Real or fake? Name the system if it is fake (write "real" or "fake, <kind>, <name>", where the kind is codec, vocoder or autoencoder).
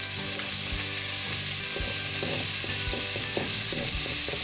real